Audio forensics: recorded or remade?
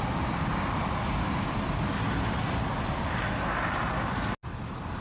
recorded